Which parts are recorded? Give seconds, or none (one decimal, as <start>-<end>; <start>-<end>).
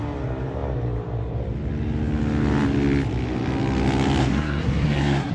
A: 0.0-4.2